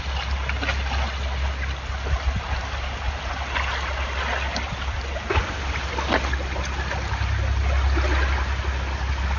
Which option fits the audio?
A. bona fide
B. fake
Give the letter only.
A